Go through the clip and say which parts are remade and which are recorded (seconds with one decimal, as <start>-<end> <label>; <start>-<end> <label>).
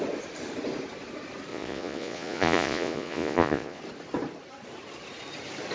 0.0-1.5 recorded; 1.5-3.8 remade; 3.8-5.7 recorded